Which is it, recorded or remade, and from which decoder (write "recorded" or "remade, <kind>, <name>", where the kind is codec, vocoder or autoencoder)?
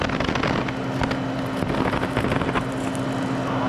recorded